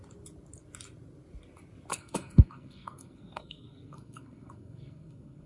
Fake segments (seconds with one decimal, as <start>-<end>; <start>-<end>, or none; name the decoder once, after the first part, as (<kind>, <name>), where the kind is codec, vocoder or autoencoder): 1.9-5.5 (codec, SNAC)